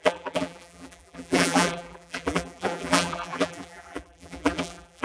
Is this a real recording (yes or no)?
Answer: no